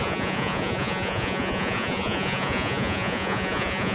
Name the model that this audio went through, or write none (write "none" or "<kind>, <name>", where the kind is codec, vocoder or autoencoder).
vocoder, Vocos